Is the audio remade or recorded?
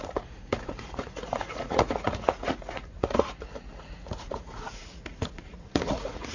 remade